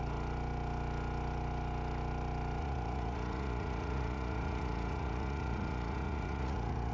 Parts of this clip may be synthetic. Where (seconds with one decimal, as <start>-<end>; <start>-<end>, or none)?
2.6-6.9